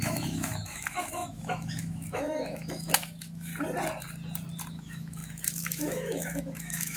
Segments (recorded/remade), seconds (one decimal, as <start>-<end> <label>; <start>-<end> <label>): 0.0-3.5 remade; 3.5-4.7 recorded; 4.7-7.0 remade